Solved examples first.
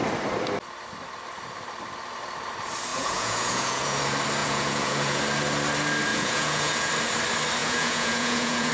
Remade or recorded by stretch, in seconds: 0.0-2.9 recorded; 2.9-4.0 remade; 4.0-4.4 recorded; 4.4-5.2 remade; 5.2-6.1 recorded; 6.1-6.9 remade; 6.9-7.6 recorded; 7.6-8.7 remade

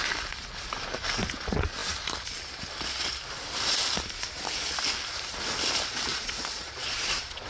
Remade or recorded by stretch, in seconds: 0.0-6.1 recorded; 6.1-7.5 remade

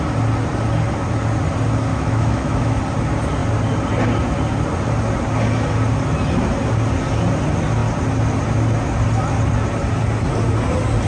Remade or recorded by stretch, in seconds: 0.0-1.9 recorded; 1.9-2.8 remade; 2.8-11.1 recorded

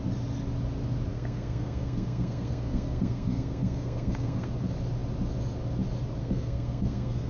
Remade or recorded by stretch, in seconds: 0.0-1.1 recorded; 1.1-4.5 remade; 4.5-6.2 recorded; 6.2-7.3 remade

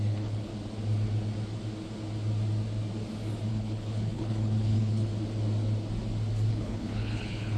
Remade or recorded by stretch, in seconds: 0.0-0.5 remade; 0.5-3.5 recorded; 3.5-5.1 remade; 5.1-6.5 recorded; 6.5-7.6 remade

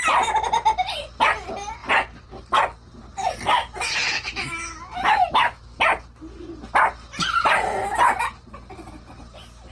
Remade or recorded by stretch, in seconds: 0.0-3.6 recorded; 3.6-5.8 remade; 5.8-9.7 recorded

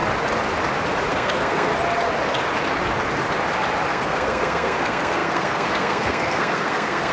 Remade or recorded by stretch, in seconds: 0.0-1.1 recorded; 1.1-1.7 remade; 1.7-3.9 recorded; 3.9-7.1 remade

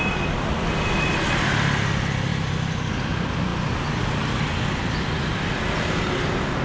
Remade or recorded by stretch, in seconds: 0.0-6.6 recorded